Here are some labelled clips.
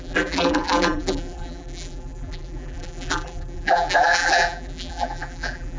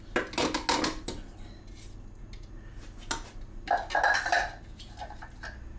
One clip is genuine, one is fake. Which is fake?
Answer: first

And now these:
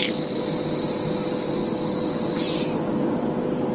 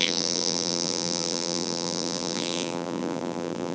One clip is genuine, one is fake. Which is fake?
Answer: second